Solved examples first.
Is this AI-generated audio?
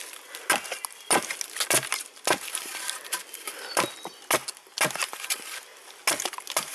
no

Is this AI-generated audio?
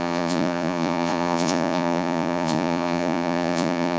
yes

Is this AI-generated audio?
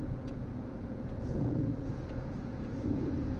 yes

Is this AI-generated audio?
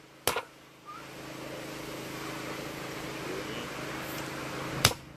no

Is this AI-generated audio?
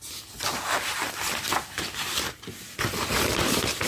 no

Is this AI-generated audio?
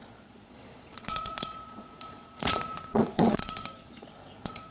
yes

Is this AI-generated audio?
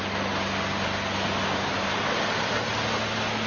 no